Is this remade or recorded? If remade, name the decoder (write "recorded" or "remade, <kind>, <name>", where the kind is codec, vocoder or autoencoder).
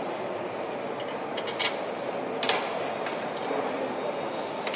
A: recorded